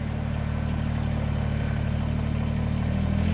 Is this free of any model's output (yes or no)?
yes